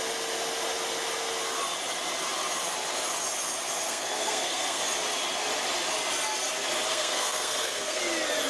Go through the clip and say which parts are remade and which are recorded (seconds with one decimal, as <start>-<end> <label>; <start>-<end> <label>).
0.0-3.9 recorded; 3.9-4.8 remade; 4.8-6.9 recorded; 6.9-8.0 remade; 8.0-8.5 recorded

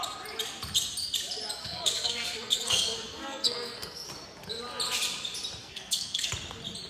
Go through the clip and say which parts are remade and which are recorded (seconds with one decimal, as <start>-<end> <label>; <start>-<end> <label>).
0.0-1.6 recorded; 1.6-4.1 remade; 4.1-5.6 recorded; 5.6-6.3 remade; 6.3-6.9 recorded

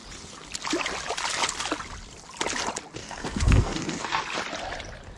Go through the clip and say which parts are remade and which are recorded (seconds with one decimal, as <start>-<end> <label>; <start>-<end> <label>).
0.0-3.0 recorded; 3.0-4.2 remade; 4.2-5.2 recorded

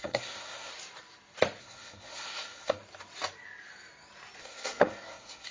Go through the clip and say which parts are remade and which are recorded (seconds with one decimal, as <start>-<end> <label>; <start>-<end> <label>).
0.0-0.7 remade; 0.7-1.6 recorded; 1.6-2.8 remade; 2.8-4.4 recorded; 4.4-5.5 remade